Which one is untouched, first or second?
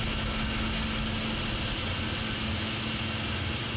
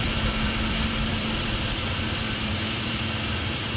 first